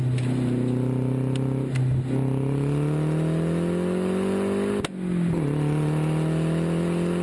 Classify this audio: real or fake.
real